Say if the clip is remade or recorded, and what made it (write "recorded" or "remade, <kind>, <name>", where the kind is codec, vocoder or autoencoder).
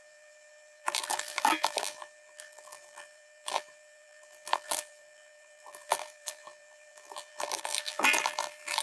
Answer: remade, vocoder, BigVGAN v2